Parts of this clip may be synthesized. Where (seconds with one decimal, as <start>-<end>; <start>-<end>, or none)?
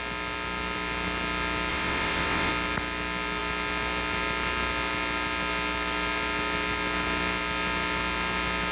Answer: 1.7-2.5